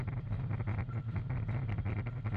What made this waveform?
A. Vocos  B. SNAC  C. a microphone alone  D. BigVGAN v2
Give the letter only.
C